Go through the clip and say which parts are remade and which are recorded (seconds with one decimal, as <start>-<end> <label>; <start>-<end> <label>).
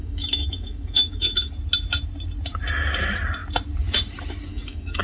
0.0-1.5 remade; 1.5-4.5 recorded; 4.5-5.0 remade